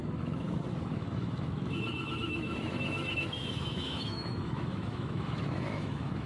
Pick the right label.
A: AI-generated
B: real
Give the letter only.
A